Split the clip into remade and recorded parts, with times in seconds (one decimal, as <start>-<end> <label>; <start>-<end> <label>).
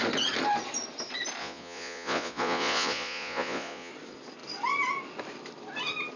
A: 0.0-1.4 recorded; 1.4-3.9 remade; 3.9-6.2 recorded